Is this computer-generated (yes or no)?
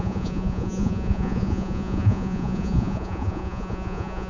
yes